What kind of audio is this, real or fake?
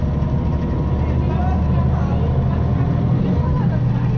real